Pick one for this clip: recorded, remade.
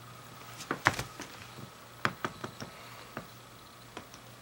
recorded